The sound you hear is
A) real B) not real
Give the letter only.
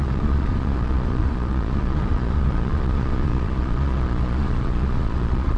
B